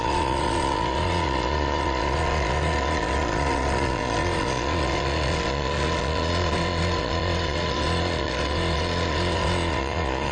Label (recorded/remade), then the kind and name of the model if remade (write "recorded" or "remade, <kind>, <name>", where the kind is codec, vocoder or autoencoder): remade, vocoder, Vocos